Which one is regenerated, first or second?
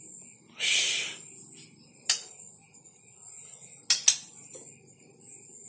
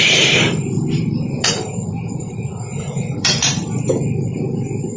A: second